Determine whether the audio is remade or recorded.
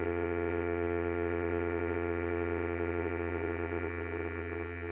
remade